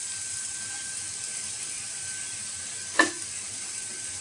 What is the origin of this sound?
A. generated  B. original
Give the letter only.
B